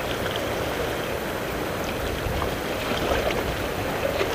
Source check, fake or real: real